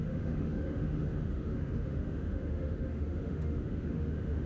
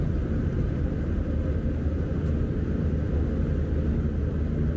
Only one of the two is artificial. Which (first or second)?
first